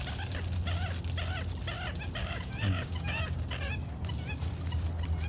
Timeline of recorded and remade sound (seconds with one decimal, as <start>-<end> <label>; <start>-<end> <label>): 0.0-2.2 recorded; 2.2-3.4 remade; 3.4-5.3 recorded